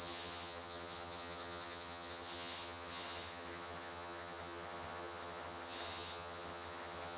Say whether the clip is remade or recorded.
remade